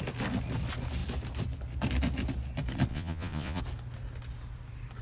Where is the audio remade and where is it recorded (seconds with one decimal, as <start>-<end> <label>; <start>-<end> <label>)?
0.0-2.9 recorded; 2.9-3.6 remade; 3.6-5.0 recorded